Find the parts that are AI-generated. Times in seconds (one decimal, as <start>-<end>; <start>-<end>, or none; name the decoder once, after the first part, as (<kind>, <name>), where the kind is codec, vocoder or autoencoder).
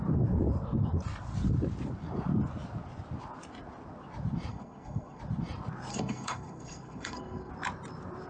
4.5-5.2 (codec, SNAC); 5.9-7.5